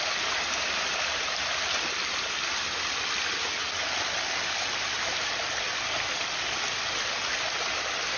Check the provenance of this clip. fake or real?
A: real